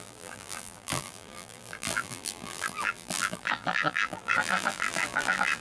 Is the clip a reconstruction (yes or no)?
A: yes